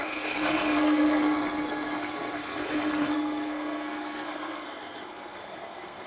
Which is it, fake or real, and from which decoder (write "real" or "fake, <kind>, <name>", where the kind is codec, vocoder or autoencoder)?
fake, codec, SNAC